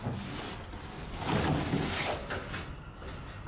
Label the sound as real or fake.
real